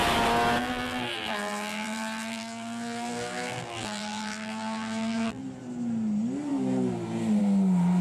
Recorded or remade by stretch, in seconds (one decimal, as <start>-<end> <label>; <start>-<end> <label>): 0.0-0.6 recorded; 0.6-5.4 remade; 5.4-8.0 recorded

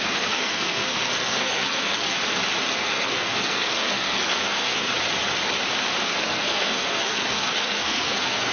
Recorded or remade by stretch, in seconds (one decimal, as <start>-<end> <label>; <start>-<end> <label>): 0.0-2.2 remade; 2.2-2.7 recorded; 2.7-4.9 remade; 4.9-6.0 recorded; 6.0-8.5 remade

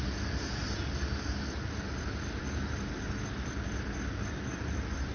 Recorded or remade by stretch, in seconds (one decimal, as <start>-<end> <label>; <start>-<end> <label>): 0.0-5.1 recorded